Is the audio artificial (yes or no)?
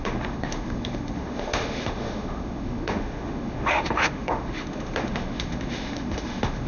yes